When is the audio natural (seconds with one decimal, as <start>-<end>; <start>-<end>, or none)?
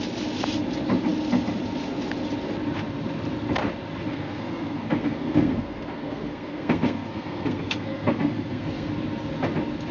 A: 0.0-4.1; 8.9-9.9